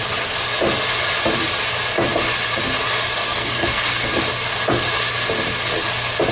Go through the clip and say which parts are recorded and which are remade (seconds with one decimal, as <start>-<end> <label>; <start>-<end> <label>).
0.0-3.2 recorded; 3.2-4.1 remade; 4.1-6.3 recorded